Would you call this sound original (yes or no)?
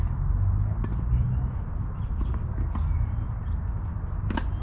yes